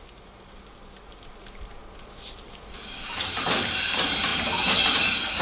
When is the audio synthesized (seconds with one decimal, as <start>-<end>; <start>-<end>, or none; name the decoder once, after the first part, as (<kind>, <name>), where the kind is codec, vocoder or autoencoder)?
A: 0.0-1.8 (vocoder, BigVGAN v2); 2.4-5.4